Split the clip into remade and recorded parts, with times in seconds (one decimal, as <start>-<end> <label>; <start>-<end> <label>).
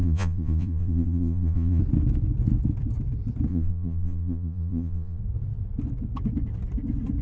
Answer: 0.0-1.8 remade; 1.8-3.5 recorded; 3.5-5.2 remade; 5.2-7.2 recorded